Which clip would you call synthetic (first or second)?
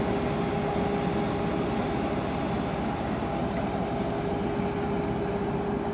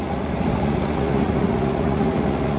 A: second